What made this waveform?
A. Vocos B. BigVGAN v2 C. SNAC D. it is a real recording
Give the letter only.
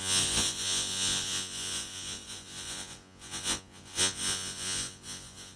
A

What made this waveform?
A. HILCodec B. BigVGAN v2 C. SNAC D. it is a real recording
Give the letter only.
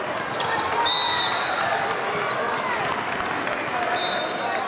D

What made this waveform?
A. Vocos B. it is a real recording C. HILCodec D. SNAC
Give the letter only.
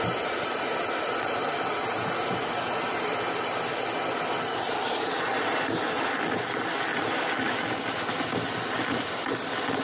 B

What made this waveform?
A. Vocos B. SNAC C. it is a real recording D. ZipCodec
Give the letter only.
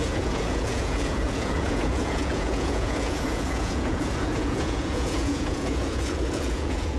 A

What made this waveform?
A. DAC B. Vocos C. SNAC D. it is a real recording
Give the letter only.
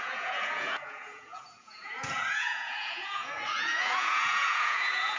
B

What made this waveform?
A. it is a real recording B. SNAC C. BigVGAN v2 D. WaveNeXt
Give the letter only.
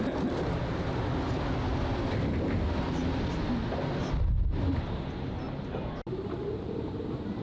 A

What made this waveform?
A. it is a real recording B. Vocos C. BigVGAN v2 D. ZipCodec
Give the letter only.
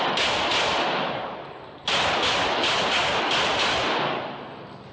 A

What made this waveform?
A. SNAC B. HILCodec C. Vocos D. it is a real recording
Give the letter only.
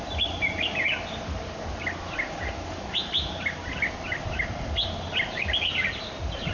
D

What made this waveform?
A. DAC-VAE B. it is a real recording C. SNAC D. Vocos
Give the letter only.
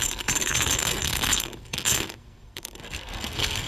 C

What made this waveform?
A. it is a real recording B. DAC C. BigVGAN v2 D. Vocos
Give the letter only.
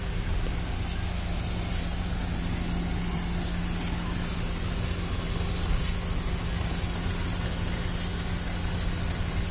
A